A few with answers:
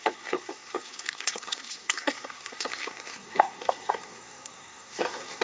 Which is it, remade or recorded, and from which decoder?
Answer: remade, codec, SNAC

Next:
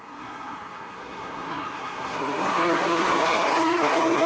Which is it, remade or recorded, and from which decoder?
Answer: remade, codec, SNAC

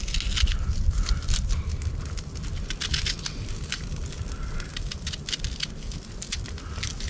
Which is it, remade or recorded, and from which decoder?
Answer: recorded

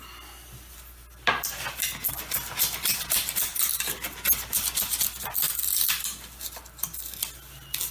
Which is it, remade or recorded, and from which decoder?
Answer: recorded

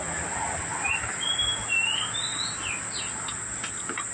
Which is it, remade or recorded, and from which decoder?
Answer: recorded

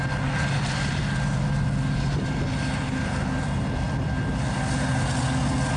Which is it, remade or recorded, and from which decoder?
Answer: recorded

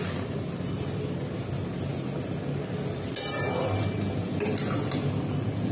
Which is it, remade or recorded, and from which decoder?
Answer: recorded